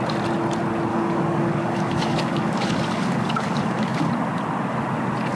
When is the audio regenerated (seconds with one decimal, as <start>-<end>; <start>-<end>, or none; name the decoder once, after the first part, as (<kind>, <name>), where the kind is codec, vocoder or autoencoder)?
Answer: 0.9-4.1 (codec, DAC)

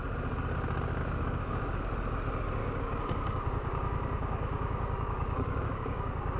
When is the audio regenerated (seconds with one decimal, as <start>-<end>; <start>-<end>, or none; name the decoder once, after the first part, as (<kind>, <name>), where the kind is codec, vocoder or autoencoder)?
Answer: 1.0-1.8 (codec, DAC); 2.6-6.4

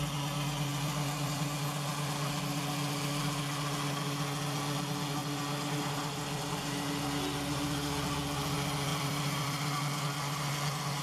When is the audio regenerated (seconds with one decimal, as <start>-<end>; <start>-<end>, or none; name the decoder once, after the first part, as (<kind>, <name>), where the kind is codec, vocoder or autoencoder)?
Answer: 0.7-1.4 (vocoder, BigVGAN v2); 5.2-5.9; 8.9-9.8

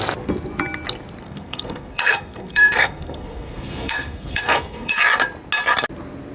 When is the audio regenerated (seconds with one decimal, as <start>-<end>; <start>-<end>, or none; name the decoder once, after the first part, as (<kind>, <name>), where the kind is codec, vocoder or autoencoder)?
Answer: 1.2-5.0 (codec, SNAC)

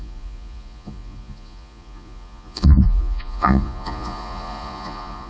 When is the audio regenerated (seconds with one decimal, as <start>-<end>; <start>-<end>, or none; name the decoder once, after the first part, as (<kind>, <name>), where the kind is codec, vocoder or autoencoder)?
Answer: 0.0-5.3 (vocoder, Vocos)